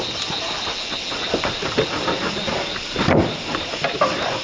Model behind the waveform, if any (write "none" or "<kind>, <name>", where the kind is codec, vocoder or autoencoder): none